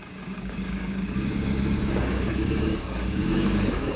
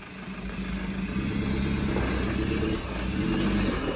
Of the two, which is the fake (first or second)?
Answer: first